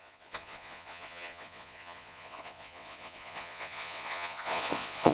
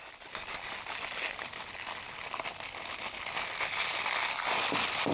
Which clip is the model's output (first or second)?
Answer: first